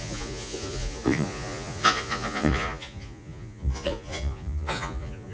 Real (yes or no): no